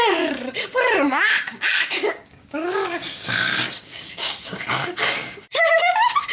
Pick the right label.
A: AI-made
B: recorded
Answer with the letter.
A